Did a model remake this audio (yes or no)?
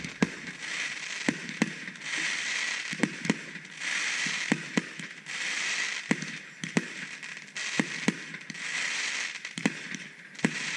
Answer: no